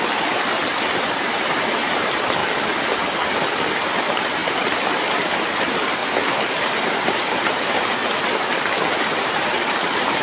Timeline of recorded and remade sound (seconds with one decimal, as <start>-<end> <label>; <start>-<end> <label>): 0.0-2.4 remade; 2.4-4.0 recorded; 4.0-4.4 remade; 4.4-5.6 recorded; 5.6-6.0 remade; 6.0-6.5 recorded; 6.5-8.0 remade; 8.0-9.2 recorded; 9.2-10.2 remade